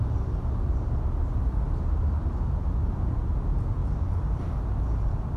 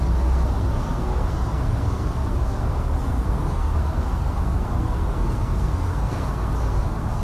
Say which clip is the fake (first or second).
second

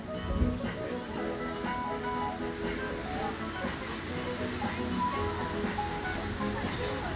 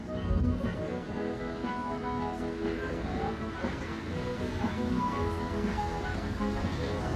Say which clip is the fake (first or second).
second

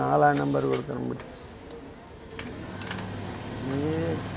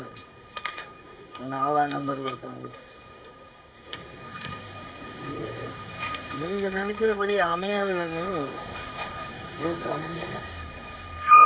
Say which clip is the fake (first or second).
second